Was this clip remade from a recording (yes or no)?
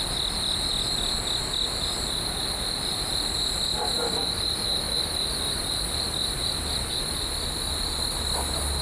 no